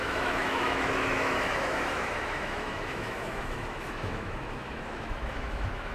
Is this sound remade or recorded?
remade